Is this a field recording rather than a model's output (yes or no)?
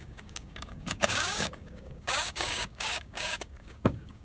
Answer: no